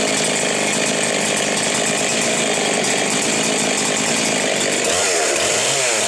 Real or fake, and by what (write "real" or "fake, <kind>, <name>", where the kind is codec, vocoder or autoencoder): real